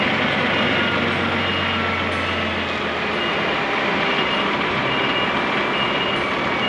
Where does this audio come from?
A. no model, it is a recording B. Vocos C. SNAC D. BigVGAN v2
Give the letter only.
A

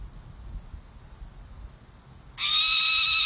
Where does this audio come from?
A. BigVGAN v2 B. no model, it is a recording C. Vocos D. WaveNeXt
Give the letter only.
B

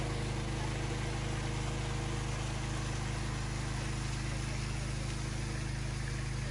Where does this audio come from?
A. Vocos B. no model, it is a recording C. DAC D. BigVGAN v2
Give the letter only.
B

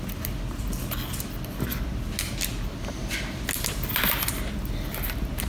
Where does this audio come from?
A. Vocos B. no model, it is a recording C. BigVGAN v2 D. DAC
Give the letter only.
B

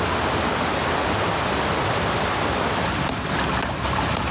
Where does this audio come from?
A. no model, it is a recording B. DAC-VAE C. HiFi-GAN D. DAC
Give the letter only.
A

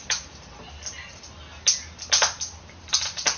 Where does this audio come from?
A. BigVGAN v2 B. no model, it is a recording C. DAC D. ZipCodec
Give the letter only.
B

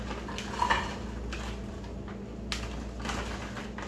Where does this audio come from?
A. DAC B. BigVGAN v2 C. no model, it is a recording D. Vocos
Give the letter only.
C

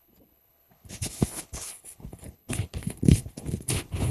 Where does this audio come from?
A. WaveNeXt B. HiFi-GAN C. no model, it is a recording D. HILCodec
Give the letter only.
D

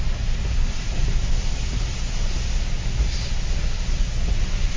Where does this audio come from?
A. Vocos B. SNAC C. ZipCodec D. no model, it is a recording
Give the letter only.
D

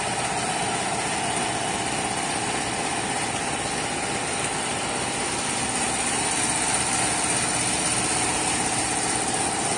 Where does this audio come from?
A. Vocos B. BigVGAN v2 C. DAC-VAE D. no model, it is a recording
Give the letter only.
D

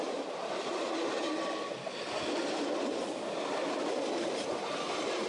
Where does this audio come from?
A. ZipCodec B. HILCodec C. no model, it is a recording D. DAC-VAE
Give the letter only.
C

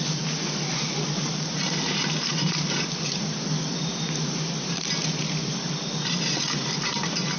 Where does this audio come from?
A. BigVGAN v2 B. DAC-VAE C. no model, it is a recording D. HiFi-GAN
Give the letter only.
C